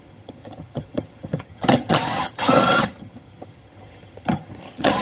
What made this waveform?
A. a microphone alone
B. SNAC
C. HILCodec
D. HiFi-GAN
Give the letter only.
D